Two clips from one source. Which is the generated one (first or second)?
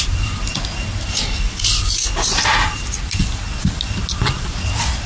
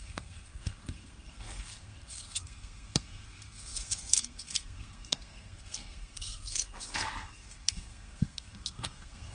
second